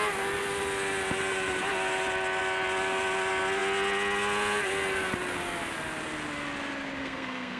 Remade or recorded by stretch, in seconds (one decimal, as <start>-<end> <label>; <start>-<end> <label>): 0.0-7.0 recorded; 7.0-7.6 remade